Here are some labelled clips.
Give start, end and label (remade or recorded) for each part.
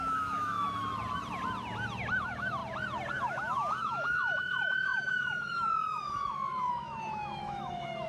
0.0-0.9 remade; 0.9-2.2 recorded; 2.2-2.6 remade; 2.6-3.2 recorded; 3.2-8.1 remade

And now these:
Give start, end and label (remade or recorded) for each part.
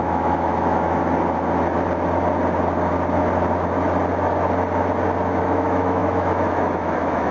0.0-1.0 remade; 1.0-5.4 recorded; 5.4-7.3 remade